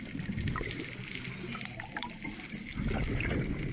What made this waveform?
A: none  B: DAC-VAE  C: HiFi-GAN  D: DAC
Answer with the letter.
A